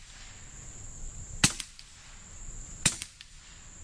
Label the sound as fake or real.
real